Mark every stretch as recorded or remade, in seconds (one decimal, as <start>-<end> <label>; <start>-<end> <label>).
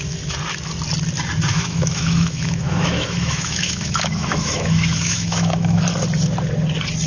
0.0-1.5 recorded; 1.5-5.8 remade; 5.8-7.1 recorded